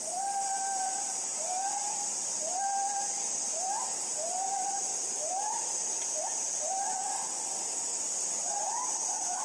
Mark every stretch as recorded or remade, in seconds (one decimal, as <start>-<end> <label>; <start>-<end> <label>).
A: 0.0-1.3 remade; 1.3-4.5 recorded; 4.5-4.9 remade; 4.9-5.9 recorded; 5.9-9.4 remade